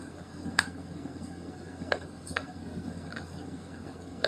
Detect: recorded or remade remade